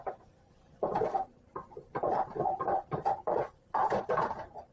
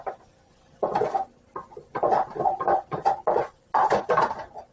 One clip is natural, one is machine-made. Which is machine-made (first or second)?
first